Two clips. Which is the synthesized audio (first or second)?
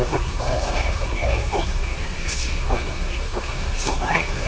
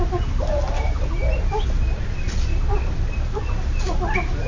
first